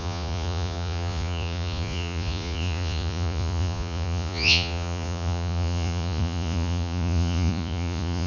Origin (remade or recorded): remade